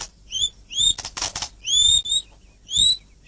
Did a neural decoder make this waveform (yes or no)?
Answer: no